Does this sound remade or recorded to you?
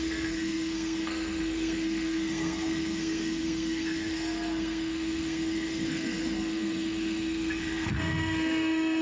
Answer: remade